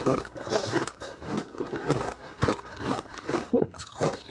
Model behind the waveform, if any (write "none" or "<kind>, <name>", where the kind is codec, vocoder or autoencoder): codec, SNAC